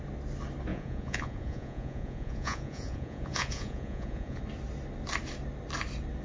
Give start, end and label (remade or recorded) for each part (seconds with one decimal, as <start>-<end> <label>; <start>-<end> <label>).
0.0-0.7 recorded; 0.7-4.4 remade; 4.4-6.2 recorded